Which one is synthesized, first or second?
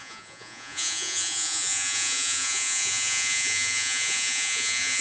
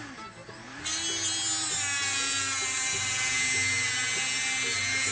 first